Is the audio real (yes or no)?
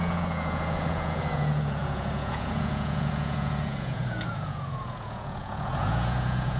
no